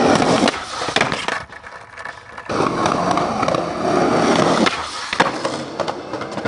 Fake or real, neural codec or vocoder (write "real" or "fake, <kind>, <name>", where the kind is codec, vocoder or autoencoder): real